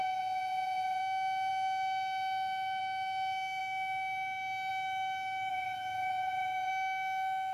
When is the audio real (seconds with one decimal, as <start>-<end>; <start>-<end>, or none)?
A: 1.0-5.5; 6.7-7.5

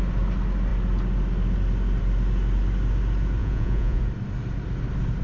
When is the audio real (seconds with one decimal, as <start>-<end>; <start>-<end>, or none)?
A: 0.0-3.4; 4.0-5.2

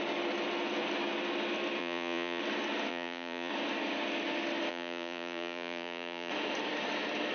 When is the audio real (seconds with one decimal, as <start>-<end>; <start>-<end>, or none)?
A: 0.0-1.8; 2.4-2.9; 3.5-4.7; 6.3-7.3

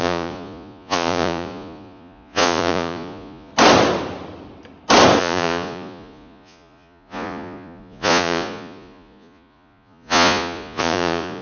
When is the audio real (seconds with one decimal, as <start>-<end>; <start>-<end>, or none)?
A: 3.5-5.2

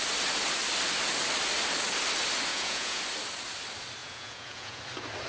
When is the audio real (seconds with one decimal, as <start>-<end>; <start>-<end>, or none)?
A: 0.0-2.5; 3.0-4.0; 4.8-5.3

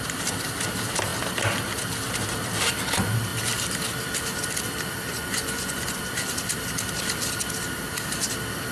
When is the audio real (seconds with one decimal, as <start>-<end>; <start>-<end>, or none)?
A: 0.0-5.1; 6.0-8.7

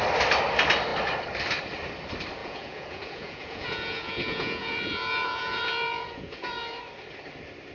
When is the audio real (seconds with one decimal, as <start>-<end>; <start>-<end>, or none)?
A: 0.0-2.4; 6.8-7.7

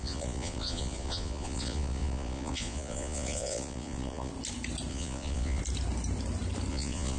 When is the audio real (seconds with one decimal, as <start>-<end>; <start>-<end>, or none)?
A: 4.3-4.9; 5.6-6.7